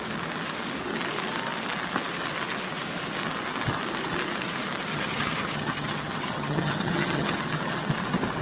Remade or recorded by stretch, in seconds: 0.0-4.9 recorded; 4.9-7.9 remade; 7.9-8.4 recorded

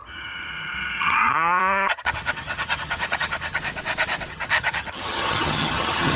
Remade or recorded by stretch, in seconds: 0.0-3.6 remade; 3.6-4.3 recorded; 4.3-6.2 remade

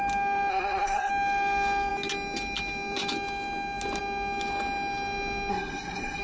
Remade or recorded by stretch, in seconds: 0.0-0.5 recorded; 0.5-1.1 remade; 1.1-5.5 recorded; 5.5-6.2 remade